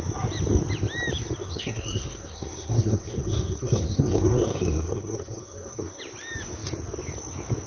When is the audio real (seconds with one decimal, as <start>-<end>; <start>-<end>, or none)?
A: 0.0-1.4; 6.0-7.7